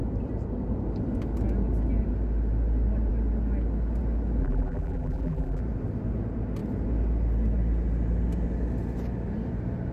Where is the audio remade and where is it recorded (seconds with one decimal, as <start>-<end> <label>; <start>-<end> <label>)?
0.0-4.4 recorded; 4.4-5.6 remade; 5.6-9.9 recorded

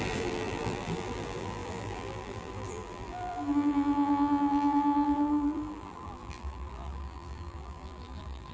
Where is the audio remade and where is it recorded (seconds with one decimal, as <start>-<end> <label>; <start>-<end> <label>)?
0.0-8.5 remade

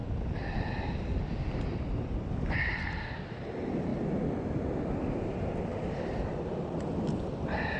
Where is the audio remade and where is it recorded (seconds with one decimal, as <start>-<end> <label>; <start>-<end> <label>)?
0.0-0.8 remade; 0.8-3.9 recorded; 3.9-5.0 remade; 5.0-5.7 recorded; 5.7-6.6 remade; 6.6-7.8 recorded

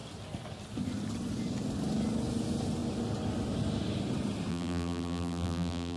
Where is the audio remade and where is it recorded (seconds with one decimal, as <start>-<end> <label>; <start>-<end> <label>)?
0.0-4.5 recorded; 4.5-6.0 remade

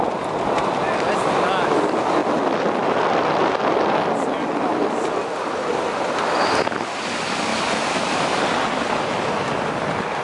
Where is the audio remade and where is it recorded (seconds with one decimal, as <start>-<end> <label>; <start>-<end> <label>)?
0.0-10.2 recorded

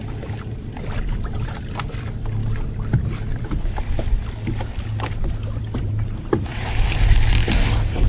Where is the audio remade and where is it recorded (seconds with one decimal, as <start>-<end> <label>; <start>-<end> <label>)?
0.0-2.4 remade; 2.4-5.6 recorded; 5.6-7.4 remade; 7.4-8.1 recorded

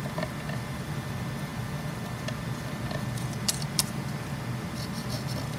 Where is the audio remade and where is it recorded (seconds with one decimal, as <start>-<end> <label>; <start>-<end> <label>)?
0.0-5.6 recorded

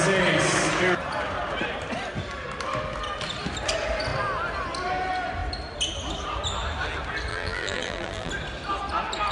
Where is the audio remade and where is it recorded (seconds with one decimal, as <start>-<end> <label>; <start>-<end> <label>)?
0.0-7.3 recorded; 7.3-8.3 remade; 8.3-9.3 recorded